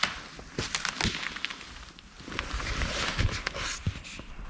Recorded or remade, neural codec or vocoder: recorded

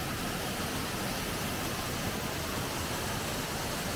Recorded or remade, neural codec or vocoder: recorded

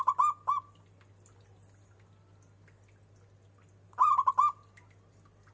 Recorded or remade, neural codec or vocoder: recorded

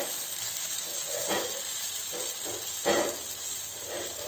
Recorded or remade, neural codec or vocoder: remade, vocoder, BigVGAN v2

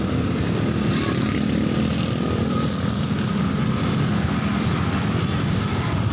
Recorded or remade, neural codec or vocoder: remade, vocoder, BigVGAN v2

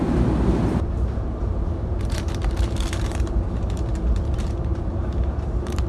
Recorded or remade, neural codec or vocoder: remade, vocoder, BigVGAN v2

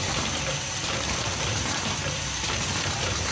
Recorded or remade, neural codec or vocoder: remade, vocoder, BigVGAN v2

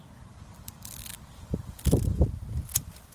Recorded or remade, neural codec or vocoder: remade, vocoder, BigVGAN v2